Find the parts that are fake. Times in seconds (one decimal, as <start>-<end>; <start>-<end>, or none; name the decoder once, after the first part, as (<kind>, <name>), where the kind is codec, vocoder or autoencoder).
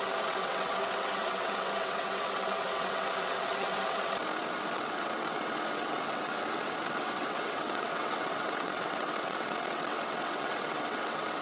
0.0-4.2 (vocoder, WaveNeXt); 4.7-11.4